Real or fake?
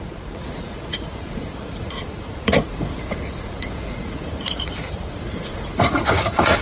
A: fake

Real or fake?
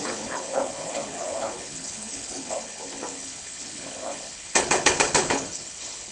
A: fake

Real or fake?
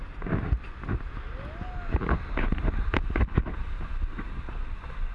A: real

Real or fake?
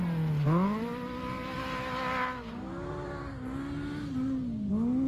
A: real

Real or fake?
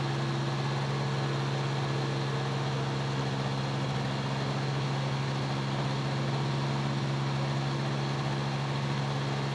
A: real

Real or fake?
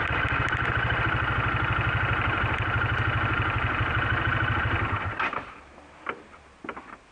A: real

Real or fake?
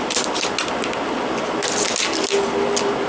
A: real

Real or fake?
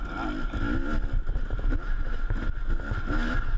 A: real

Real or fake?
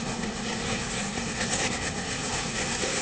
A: fake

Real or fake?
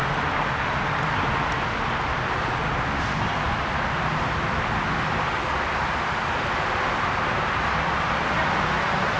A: real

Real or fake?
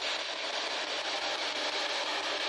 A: real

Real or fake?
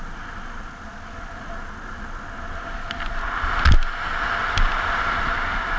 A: real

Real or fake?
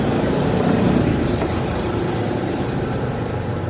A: fake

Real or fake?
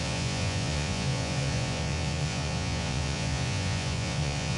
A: fake